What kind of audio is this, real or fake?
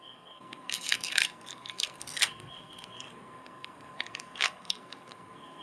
fake